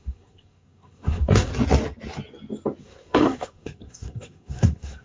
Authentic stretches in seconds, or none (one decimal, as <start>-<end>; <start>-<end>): 1.5-2.8